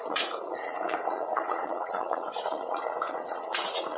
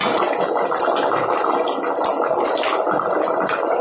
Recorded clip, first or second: second